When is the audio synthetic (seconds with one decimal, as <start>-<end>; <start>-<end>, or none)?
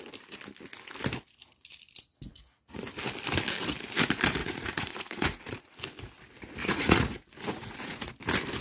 2.3-2.8; 4.4-5.4; 6.6-8.1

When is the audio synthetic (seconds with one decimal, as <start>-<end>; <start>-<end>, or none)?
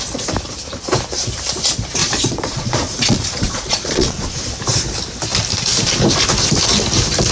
2.0-4.4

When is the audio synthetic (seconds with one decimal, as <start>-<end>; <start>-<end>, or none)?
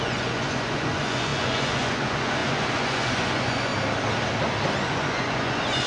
0.0-3.7; 4.9-5.9